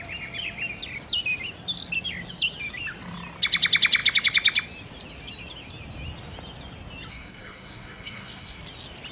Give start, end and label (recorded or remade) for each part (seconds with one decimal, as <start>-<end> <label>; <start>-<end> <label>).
0.0-7.1 recorded; 7.1-8.6 remade; 8.6-9.1 recorded